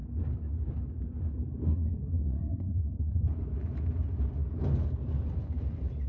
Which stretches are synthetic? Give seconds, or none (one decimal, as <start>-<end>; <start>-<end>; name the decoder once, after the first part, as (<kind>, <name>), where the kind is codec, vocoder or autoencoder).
1.7-3.2 (codec, SNAC)

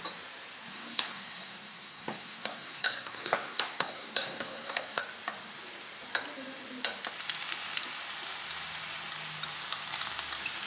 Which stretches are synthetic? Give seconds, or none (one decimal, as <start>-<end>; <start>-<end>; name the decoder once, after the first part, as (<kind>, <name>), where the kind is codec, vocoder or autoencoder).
0.7-5.0 (codec, SNAC)